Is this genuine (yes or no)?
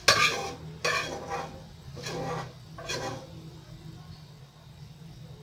yes